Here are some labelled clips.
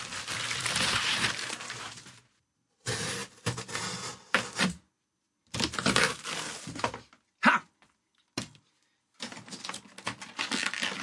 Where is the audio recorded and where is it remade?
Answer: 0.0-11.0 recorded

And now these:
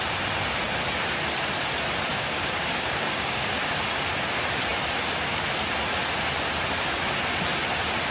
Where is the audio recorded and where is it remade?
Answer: 0.0-2.1 recorded; 2.1-3.6 remade; 3.6-8.1 recorded

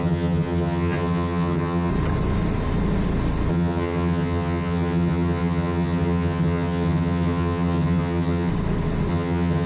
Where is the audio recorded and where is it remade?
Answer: 0.0-1.9 remade; 1.9-3.5 recorded; 3.5-8.5 remade; 8.5-9.1 recorded; 9.1-9.7 remade

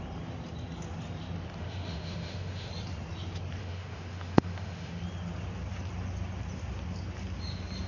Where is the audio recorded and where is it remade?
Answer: 0.0-1.6 recorded; 1.6-2.7 remade; 2.7-3.6 recorded; 3.6-5.0 remade; 5.0-7.9 recorded